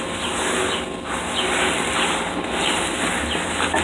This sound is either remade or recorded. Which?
recorded